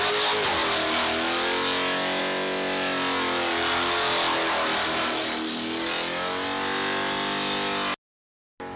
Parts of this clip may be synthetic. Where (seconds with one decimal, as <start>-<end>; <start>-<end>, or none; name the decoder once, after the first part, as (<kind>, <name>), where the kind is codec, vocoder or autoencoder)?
none